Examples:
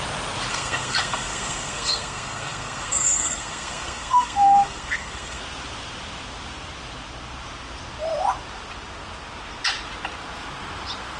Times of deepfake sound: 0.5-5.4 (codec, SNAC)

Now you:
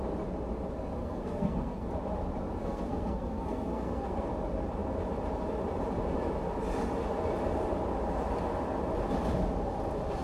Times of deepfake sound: 1.0-1.9 (codec, SNAC); 2.6-4.3

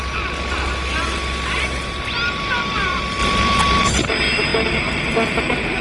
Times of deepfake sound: 4.5-5.1 (vocoder, BigVGAN v2)